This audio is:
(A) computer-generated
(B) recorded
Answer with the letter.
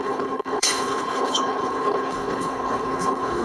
A